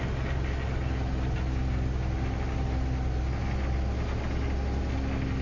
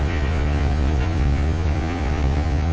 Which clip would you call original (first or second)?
first